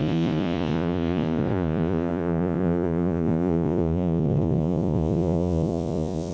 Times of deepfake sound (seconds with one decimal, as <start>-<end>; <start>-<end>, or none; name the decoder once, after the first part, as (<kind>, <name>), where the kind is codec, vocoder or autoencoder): 0.0-6.3 (vocoder, Vocos)